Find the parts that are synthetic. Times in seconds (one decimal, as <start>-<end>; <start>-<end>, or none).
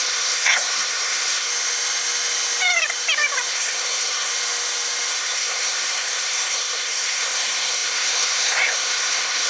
0.0-1.5; 3.5-4.3; 5.1-9.5